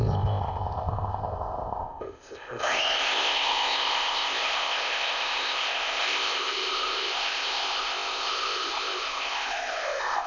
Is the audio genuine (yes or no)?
no